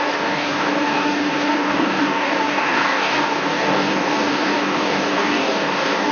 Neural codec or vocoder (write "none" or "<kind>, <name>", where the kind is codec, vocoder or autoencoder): codec, DAC